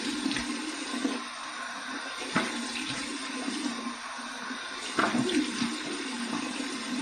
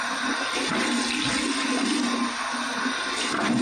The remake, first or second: first